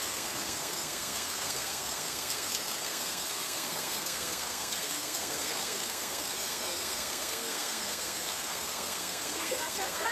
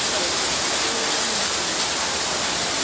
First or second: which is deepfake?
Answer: first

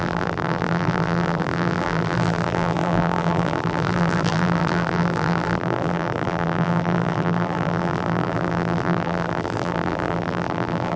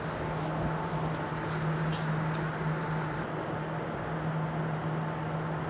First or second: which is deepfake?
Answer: first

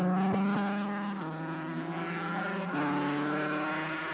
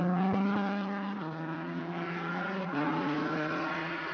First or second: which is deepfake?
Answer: second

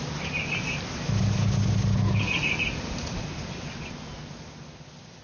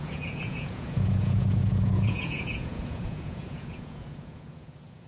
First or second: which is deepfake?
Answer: second